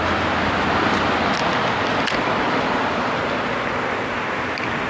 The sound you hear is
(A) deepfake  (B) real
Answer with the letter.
B